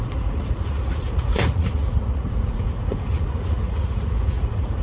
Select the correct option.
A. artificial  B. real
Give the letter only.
A